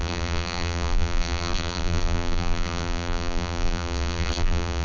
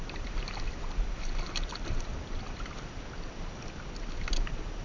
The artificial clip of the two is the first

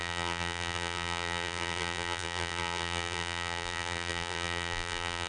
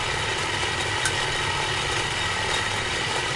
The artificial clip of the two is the first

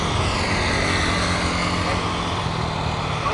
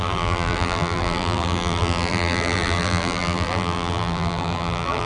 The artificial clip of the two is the second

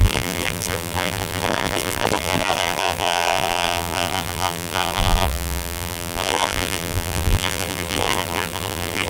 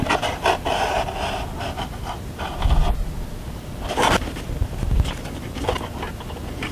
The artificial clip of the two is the first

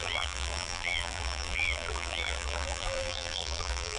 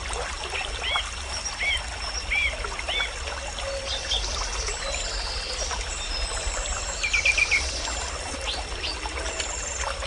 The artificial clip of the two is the first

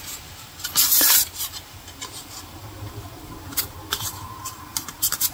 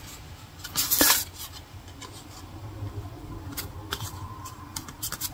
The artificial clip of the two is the first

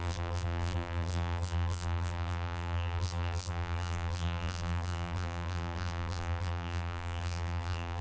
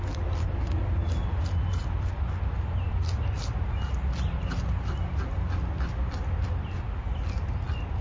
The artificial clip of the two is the first